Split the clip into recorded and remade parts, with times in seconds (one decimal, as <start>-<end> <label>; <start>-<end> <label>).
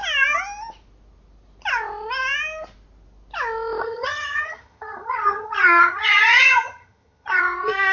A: 0.0-3.8 recorded; 3.8-7.4 remade; 7.4-7.9 recorded